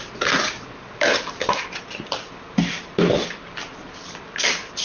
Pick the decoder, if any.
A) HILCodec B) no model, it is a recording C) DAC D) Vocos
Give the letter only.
B